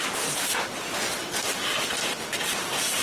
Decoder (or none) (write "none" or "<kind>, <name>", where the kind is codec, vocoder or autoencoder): vocoder, BigVGAN v2